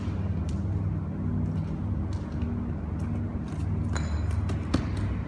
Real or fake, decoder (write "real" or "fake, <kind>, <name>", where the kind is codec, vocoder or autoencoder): real